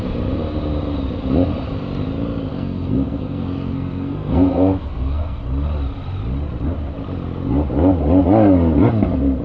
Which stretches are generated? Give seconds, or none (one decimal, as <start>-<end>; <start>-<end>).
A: 2.5-5.4